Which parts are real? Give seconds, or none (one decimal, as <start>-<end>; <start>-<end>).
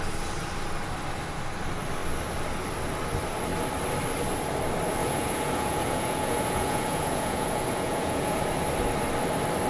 0.0-5.0; 8.4-9.7